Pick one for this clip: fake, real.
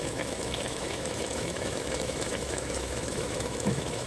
fake